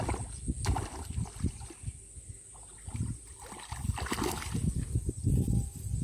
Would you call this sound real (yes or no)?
yes